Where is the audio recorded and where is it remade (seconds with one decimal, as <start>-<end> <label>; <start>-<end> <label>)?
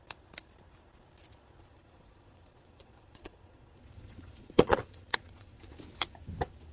0.0-1.7 recorded; 1.7-5.7 remade; 5.7-6.7 recorded